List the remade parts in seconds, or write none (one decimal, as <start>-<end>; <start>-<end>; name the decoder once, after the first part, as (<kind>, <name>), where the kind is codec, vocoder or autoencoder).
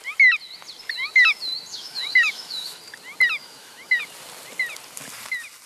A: 1.7-2.8 (autoencoder, DAC-VAE); 3.4-4.0